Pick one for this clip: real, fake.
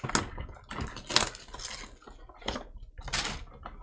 real